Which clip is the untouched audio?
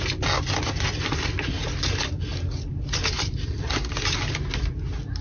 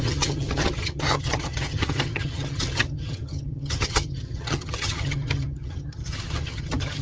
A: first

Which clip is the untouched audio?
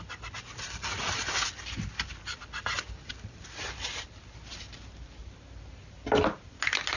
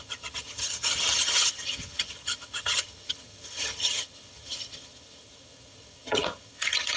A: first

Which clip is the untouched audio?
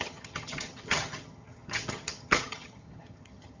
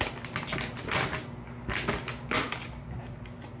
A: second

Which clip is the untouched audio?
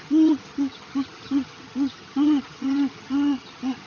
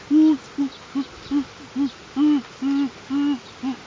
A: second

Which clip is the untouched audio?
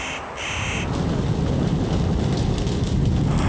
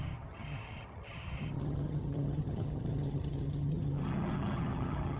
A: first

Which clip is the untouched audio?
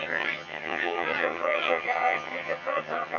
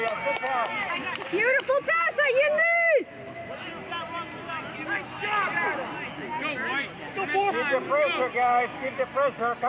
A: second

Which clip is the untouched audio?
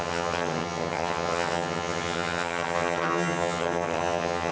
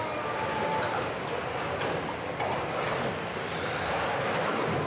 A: second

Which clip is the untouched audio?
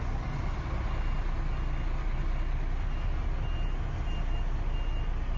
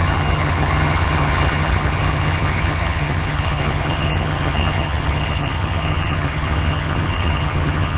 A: first